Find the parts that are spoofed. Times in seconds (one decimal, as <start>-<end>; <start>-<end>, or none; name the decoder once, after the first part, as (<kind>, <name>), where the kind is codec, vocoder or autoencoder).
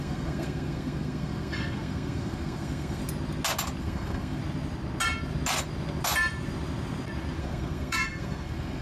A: 0.0-3.0 (codec, SNAC); 3.8-4.4; 7.4-8.8